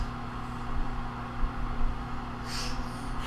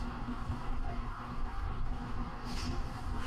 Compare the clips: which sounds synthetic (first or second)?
second